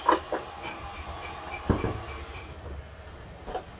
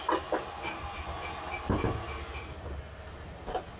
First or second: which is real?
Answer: second